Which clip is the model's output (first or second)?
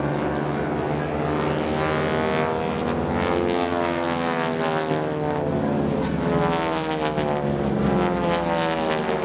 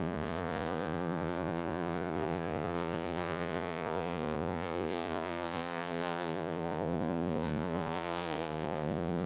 second